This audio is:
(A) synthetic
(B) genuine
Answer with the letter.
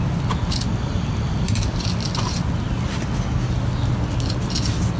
B